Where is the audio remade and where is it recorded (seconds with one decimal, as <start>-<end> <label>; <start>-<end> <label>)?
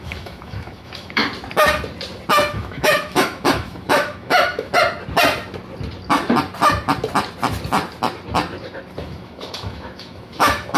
0.0-1.2 remade; 1.2-2.5 recorded; 2.5-4.7 remade; 4.7-9.0 recorded; 9.0-10.8 remade